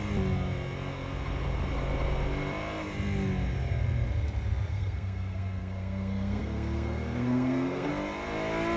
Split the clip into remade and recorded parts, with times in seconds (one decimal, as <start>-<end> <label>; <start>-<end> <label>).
0.0-4.7 recorded; 4.7-7.9 remade; 7.9-8.8 recorded